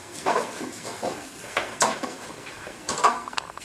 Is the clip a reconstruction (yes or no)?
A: yes